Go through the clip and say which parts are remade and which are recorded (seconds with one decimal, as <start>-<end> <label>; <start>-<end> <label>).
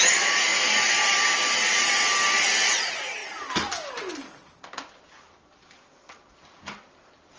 0.0-7.4 recorded